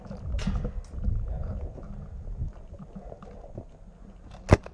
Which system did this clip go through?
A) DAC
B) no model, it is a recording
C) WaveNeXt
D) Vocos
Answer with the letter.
B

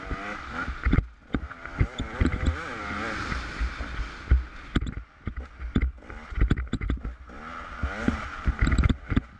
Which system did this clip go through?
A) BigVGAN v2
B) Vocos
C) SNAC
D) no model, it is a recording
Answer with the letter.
D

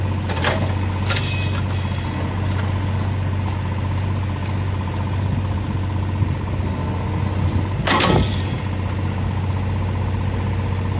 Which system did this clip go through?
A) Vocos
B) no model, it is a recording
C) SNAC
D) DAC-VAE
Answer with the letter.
B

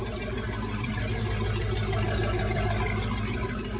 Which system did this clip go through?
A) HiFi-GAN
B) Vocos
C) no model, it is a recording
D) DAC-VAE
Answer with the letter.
C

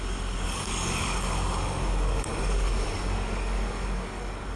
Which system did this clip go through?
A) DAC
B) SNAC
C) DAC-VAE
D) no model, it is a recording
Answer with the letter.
A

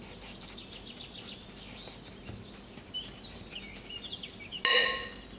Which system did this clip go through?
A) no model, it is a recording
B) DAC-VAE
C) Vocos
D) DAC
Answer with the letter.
A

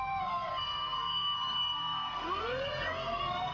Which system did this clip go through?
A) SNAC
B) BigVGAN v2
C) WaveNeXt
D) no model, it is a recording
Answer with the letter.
A